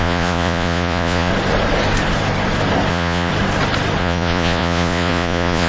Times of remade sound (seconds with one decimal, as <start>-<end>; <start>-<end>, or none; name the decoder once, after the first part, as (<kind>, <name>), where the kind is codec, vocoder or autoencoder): 0.0-1.3 (vocoder, Vocos); 2.9-3.3; 4.0-5.7